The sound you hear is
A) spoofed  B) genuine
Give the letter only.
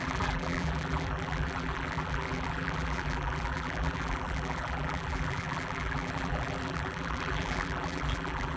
A